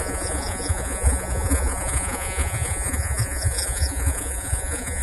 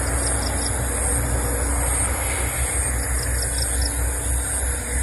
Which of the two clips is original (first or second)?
second